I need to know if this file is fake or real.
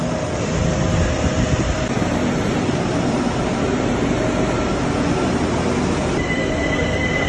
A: fake